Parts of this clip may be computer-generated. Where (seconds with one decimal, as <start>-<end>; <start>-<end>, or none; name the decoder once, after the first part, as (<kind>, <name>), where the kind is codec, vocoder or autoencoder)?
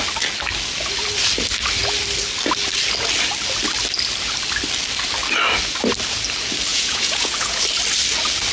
6.7-7.6 (vocoder, Vocos)